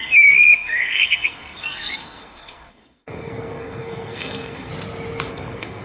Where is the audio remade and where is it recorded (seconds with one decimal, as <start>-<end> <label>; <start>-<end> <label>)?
0.0-4.7 remade; 4.7-5.3 recorded; 5.3-5.8 remade